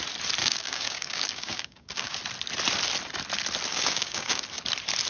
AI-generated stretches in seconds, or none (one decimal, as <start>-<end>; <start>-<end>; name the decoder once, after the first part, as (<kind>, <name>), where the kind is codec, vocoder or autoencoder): 0.4-2.2 (codec, DAC); 3.7-4.4